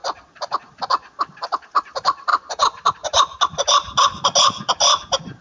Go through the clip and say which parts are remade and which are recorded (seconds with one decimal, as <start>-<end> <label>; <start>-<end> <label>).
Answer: 0.0-5.4 recorded